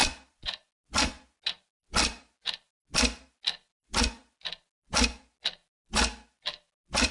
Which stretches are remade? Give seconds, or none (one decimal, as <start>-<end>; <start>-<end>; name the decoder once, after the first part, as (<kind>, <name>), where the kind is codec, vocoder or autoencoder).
none